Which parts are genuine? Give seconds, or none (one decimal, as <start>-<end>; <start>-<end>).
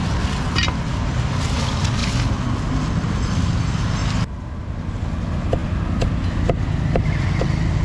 0.0-7.8